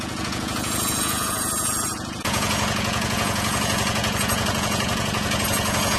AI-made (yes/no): yes